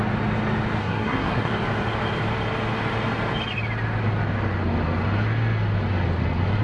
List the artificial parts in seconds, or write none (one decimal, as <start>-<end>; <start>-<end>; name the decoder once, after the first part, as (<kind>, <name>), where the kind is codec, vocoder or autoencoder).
0.8-1.5 (codec, SNAC)